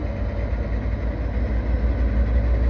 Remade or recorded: recorded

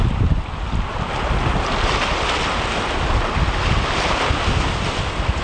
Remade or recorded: recorded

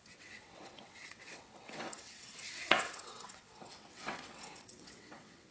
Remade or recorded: remade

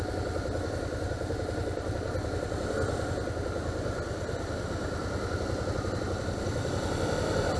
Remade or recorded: recorded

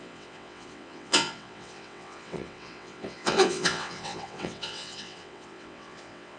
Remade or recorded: remade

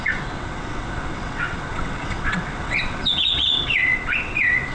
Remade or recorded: remade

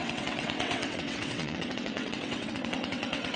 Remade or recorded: remade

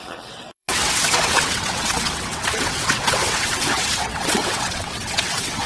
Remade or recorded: remade